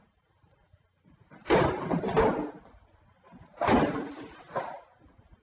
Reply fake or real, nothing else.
real